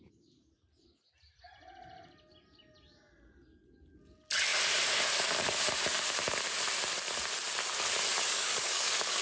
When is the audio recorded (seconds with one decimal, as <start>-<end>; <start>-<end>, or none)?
0.0-8.2